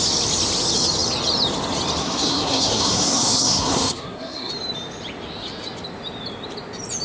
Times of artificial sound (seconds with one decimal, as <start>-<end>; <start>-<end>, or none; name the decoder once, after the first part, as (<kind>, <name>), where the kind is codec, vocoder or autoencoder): 2.0-4.5 (codec, SNAC)